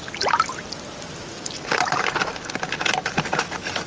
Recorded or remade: recorded